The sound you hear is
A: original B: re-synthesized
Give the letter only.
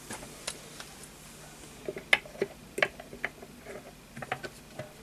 A